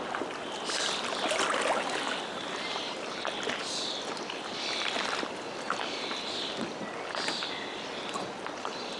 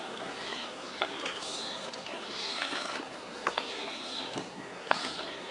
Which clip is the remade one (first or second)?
second